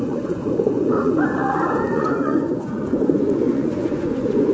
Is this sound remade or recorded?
remade